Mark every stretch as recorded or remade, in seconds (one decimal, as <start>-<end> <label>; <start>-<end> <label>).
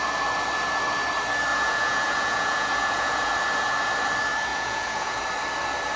0.0-1.5 recorded; 1.5-3.3 remade; 3.3-4.5 recorded; 4.5-5.2 remade; 5.2-6.0 recorded